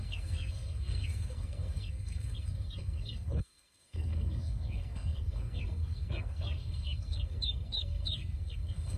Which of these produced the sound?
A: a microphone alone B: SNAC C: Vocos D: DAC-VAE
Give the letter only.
B